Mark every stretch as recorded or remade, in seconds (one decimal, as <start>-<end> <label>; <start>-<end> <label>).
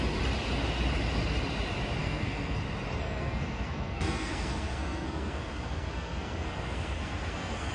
0.0-2.0 recorded; 2.0-2.6 remade; 2.6-3.0 recorded; 3.0-7.7 remade